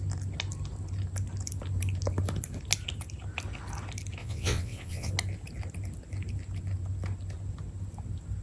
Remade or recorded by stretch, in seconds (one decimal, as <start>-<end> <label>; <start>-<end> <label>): 0.0-4.2 recorded; 4.2-5.1 remade; 5.1-8.4 recorded